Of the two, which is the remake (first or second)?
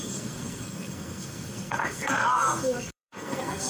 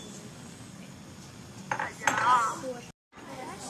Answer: first